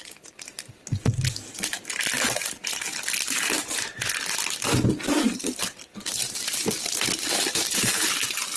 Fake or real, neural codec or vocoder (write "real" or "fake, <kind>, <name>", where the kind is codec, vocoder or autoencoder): real